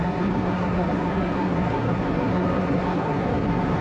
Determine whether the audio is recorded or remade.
remade